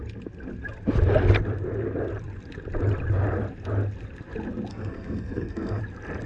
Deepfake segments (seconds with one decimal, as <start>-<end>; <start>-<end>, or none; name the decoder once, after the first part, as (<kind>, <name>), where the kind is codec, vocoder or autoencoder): 4.7-5.8 (codec, SNAC)